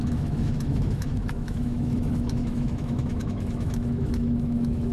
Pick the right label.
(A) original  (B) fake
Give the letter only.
B